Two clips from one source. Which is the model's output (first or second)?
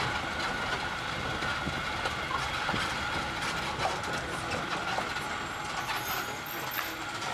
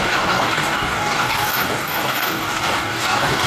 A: second